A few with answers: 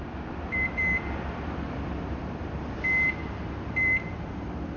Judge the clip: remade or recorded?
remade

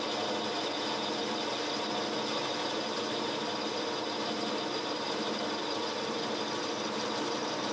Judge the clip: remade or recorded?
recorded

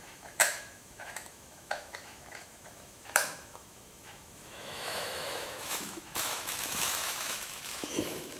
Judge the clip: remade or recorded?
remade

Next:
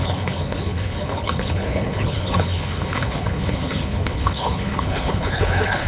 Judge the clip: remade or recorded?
remade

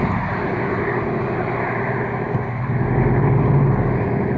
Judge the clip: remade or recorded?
recorded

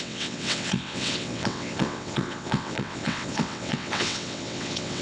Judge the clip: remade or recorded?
remade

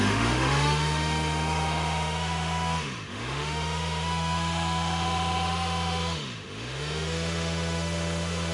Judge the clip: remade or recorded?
remade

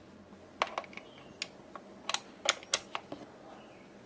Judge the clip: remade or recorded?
recorded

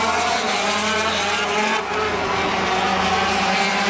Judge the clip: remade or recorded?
recorded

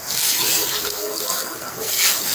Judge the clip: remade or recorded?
remade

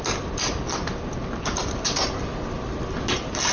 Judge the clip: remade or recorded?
recorded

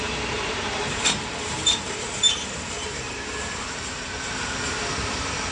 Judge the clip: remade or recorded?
remade